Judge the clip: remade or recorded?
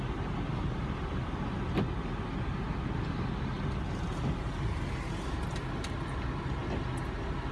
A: recorded